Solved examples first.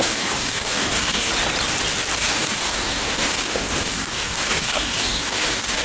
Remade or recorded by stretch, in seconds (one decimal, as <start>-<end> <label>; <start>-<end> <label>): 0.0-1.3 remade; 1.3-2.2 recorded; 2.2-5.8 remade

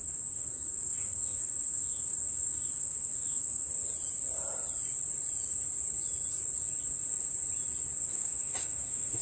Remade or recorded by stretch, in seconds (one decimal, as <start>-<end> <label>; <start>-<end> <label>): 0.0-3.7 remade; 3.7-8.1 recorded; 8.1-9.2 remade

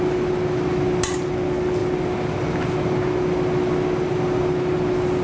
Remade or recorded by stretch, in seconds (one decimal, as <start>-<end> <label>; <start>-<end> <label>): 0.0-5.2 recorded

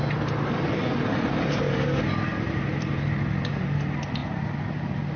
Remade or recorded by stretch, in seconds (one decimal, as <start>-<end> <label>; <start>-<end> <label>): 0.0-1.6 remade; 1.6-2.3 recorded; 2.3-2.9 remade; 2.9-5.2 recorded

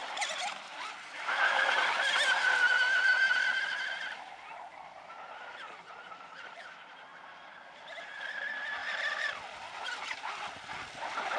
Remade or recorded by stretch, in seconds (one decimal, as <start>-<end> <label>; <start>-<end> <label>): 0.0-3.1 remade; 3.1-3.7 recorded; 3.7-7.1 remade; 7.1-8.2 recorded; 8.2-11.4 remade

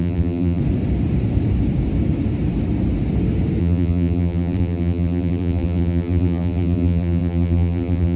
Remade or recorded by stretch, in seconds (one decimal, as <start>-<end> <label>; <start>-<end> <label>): 0.0-0.6 remade; 0.6-3.6 recorded; 3.6-8.2 remade

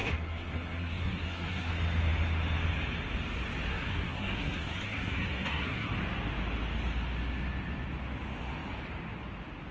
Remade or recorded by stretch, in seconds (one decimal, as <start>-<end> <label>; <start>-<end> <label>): 0.0-1.7 remade; 1.7-3.7 recorded; 3.7-5.9 remade; 5.9-9.7 recorded